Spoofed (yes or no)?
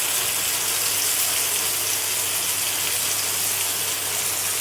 no